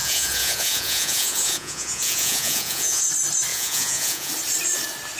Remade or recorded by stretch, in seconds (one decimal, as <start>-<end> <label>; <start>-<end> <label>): 0.0-3.1 remade; 3.1-3.5 recorded; 3.5-4.3 remade; 4.3-5.2 recorded